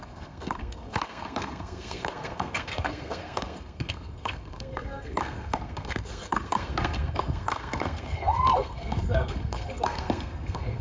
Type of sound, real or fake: fake